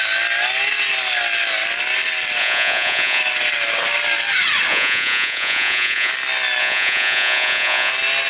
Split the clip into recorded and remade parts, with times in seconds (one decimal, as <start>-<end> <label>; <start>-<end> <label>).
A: 0.0-2.4 recorded; 2.4-3.2 remade; 3.2-4.7 recorded; 4.7-6.1 remade; 6.1-6.6 recorded; 6.6-7.9 remade; 7.9-8.3 recorded